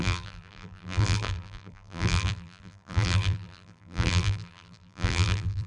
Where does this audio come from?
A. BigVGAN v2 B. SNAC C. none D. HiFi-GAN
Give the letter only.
A